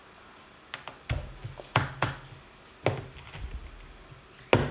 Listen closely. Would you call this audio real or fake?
real